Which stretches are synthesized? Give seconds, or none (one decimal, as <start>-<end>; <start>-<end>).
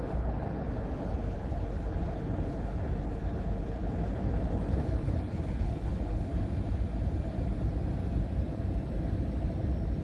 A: 0.0-6.3